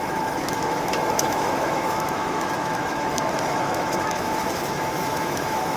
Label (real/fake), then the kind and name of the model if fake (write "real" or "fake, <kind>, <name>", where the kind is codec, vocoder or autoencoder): fake, autoencoder, DAC-VAE